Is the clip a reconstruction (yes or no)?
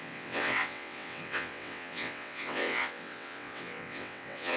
yes